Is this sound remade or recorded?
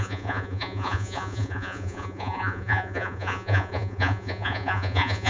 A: remade